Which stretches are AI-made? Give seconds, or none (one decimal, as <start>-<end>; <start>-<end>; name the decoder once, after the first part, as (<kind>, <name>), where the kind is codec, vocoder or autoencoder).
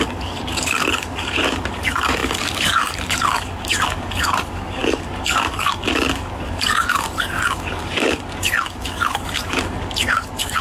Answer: 0.0-10.6 (codec, DAC)